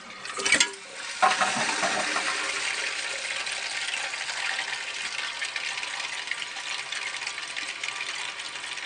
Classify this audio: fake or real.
real